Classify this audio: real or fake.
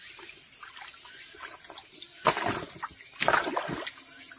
real